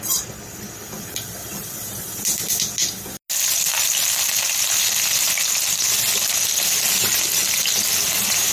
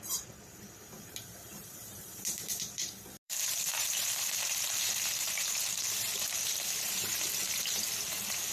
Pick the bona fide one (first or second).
first